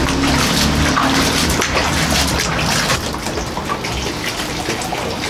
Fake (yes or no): no